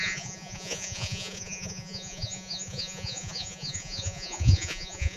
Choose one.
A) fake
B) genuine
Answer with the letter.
A